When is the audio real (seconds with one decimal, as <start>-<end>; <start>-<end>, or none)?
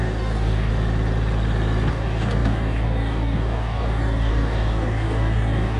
0.7-1.9